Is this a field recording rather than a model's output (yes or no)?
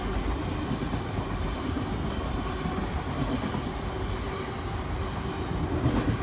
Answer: yes